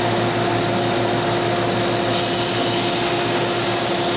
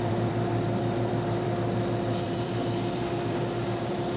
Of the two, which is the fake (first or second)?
second